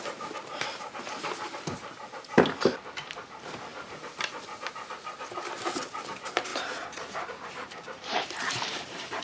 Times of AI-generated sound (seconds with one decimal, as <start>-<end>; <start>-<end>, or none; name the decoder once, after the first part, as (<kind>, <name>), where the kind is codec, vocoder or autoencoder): 6.5-9.2 (vocoder, BigVGAN v2)